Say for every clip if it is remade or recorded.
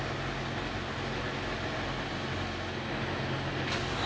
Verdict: recorded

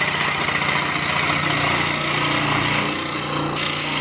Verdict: recorded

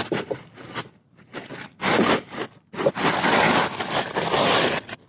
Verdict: recorded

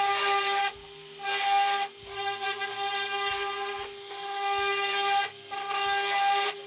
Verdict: recorded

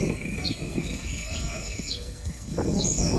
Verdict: remade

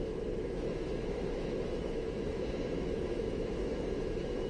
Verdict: remade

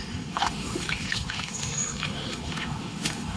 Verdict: remade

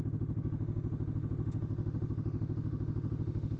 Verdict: remade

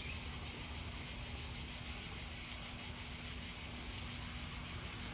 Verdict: recorded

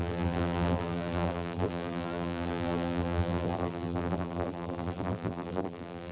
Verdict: remade